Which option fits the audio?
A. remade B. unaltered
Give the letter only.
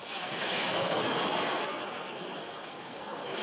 A